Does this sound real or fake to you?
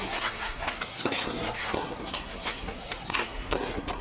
fake